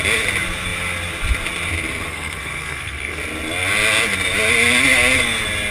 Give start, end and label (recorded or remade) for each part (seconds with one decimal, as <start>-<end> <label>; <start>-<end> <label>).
0.0-2.1 recorded; 2.1-3.2 remade; 3.2-5.7 recorded